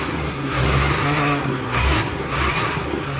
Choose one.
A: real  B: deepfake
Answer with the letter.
B